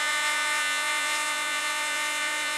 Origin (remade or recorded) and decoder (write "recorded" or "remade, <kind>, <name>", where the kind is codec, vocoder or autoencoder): remade, vocoder, Vocos